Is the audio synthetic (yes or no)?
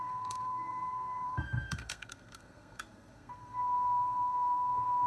yes